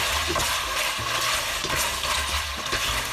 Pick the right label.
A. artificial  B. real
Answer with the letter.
B